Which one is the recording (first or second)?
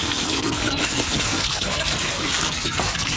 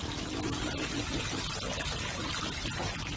second